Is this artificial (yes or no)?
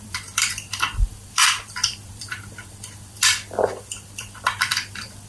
yes